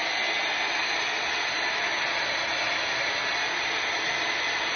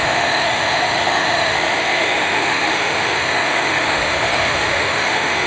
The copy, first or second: second